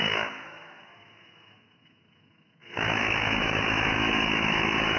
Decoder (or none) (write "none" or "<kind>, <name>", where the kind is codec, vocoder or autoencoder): autoencoder, DAC-VAE